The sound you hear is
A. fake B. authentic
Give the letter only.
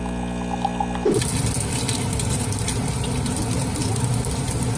B